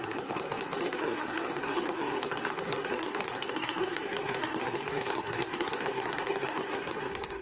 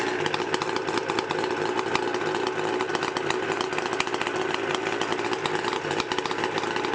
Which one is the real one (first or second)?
second